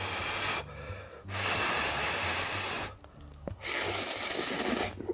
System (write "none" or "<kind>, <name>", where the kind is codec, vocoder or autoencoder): none